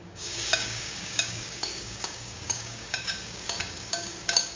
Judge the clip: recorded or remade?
remade